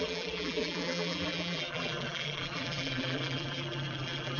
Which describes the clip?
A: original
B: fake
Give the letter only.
B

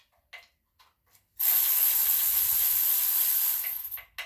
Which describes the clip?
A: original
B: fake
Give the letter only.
A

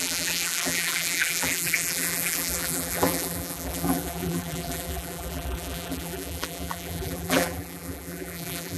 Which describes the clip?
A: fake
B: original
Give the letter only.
A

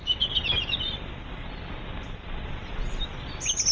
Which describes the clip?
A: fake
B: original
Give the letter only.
B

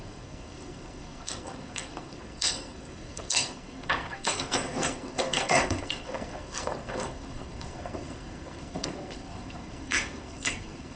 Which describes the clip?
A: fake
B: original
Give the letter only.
A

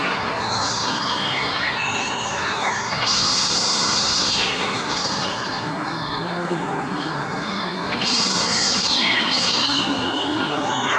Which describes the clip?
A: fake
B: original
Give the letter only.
A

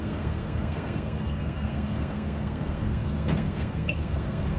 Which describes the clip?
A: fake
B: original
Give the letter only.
A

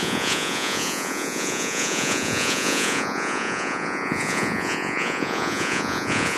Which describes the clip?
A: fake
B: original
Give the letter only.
A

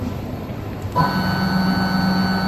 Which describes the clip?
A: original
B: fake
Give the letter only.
A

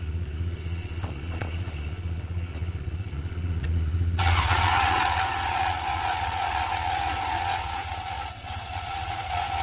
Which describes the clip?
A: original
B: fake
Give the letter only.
B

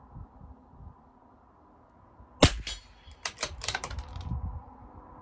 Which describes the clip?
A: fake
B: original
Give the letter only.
B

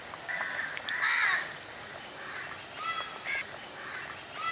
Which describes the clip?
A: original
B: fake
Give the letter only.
A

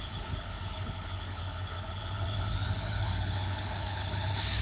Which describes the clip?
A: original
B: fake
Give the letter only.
B